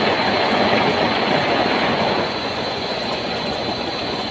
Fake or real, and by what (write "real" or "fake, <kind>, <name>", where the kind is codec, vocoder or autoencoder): fake, vocoder, Vocos